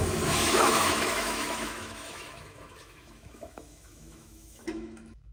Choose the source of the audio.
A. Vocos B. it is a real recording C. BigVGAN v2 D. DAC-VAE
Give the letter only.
D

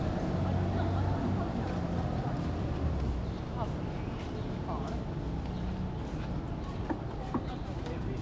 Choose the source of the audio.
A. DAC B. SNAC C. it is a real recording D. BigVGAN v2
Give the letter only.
C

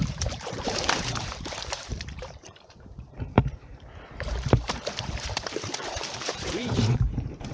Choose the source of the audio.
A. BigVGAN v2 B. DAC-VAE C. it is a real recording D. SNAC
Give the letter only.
A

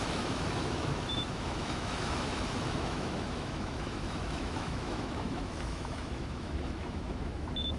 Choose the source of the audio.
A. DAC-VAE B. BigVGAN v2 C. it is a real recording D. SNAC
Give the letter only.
A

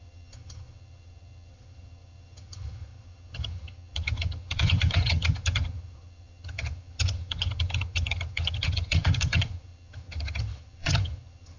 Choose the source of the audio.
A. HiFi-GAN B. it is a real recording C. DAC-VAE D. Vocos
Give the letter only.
A